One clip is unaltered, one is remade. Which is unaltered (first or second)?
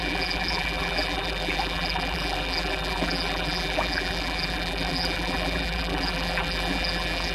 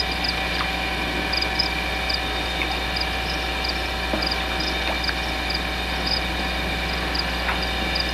second